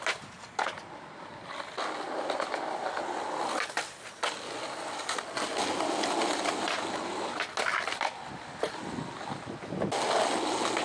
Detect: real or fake real